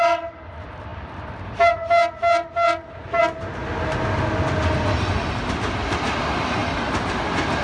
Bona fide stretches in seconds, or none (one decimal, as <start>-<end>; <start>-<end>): 0.0-7.6